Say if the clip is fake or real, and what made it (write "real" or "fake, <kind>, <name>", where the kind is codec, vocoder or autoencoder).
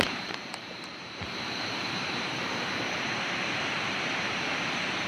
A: fake, vocoder, BigVGAN v2